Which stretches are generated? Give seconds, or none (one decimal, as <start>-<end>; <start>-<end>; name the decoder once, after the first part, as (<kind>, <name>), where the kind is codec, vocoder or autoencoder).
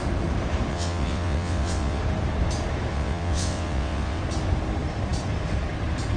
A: 0.7-2.0 (vocoder, WaveNeXt); 2.9-4.2